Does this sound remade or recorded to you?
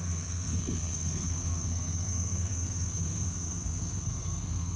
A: remade